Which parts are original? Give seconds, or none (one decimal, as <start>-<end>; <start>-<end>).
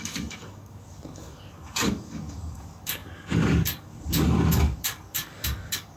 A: none